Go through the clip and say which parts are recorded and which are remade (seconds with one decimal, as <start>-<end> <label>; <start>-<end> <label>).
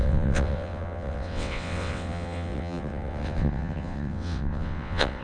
0.0-5.2 remade